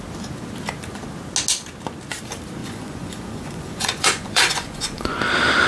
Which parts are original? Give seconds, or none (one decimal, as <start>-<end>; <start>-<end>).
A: 0.0-2.6; 5.3-5.7